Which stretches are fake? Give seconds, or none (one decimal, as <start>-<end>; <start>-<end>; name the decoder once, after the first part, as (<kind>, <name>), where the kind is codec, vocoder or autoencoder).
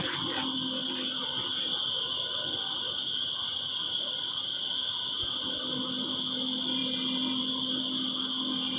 none